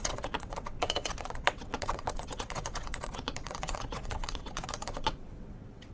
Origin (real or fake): fake